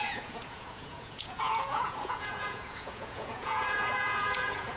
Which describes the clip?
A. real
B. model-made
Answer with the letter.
B